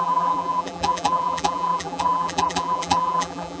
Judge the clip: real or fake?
fake